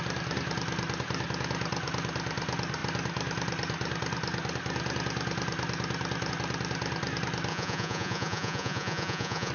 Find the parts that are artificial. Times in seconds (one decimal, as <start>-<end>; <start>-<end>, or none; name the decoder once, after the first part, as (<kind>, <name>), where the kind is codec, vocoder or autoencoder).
7.5-9.5 (vocoder, Vocos)

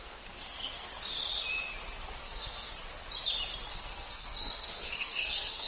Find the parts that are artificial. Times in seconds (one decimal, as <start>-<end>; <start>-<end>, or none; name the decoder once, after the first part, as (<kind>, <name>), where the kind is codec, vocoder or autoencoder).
0.0-0.9 (codec, SNAC); 2.2-2.7; 3.7-5.7

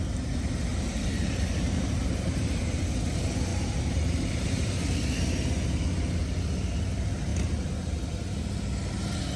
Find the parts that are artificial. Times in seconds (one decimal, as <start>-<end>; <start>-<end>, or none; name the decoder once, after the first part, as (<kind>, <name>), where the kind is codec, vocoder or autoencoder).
0.7-2.7 (vocoder, BigVGAN v2); 3.5-4.8

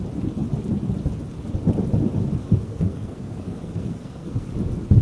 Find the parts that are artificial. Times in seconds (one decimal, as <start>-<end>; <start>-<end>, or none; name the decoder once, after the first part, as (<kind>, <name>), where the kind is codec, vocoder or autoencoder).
2.4-4.5 (codec, SNAC)

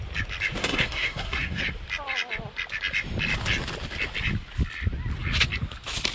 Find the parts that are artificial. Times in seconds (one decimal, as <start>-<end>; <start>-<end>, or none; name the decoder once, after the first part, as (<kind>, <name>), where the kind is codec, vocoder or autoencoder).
0.6-1.6 (codec, SNAC)

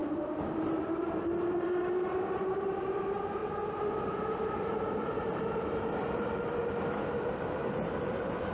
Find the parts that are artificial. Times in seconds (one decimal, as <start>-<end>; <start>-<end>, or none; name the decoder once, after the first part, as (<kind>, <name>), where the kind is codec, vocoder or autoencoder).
0.8-3.4 (vocoder, BigVGAN v2); 3.9-6.6; 7.3-8.5

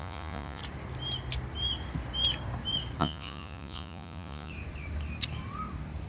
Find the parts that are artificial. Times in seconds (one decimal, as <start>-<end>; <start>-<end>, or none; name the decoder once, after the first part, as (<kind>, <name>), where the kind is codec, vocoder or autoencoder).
0.0-0.6 (vocoder, Vocos); 3.0-4.5

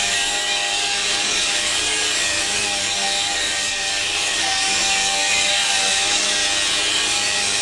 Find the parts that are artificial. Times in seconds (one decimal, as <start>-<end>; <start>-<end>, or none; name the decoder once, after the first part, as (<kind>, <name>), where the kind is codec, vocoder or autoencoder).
0.0-6.4 (codec, DAC); 6.9-7.6